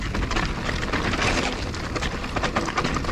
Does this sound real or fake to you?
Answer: real